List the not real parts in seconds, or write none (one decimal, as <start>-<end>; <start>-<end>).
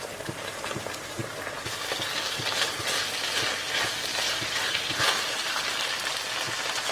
0.0-0.5; 4.1-5.6